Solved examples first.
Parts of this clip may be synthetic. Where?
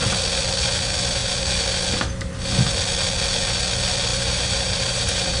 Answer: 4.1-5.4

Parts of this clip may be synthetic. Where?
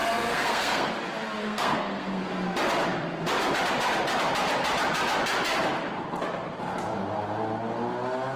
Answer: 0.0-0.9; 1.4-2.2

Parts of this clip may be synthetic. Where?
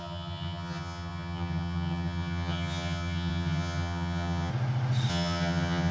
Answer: 0.0-4.5; 5.1-5.9